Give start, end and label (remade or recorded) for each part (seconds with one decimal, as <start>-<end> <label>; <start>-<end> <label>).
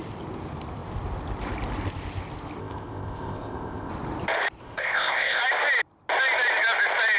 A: 0.0-2.6 recorded; 2.6-3.9 remade; 3.9-4.6 recorded; 4.6-5.4 remade; 5.4-7.2 recorded